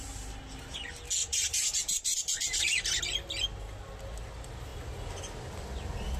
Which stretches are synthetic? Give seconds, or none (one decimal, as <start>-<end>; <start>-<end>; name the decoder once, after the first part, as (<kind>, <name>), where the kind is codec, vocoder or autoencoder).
1.2-3.0 (vocoder, BigVGAN v2)